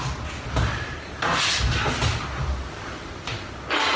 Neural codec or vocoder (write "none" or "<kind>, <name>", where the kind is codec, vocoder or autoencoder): none